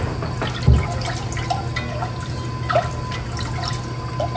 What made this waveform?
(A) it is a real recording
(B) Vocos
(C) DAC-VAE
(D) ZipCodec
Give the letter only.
A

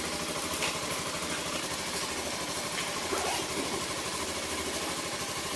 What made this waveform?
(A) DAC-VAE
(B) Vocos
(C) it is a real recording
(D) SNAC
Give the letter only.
C